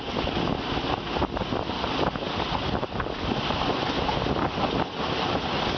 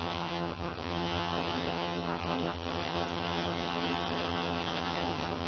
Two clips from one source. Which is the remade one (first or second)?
second